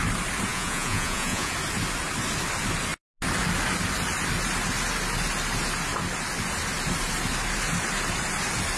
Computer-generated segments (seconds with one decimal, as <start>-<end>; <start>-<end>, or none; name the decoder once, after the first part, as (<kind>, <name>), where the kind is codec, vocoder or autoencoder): 0.5-1.5 (vocoder, Vocos)